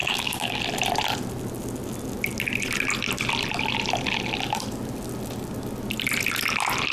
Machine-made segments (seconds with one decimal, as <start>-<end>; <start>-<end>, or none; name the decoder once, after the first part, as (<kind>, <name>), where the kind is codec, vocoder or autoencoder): 0.0-0.6 (codec, DAC)